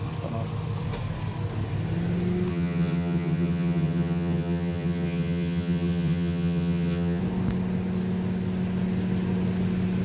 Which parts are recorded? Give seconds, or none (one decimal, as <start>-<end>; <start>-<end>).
0.0-2.5; 7.2-10.0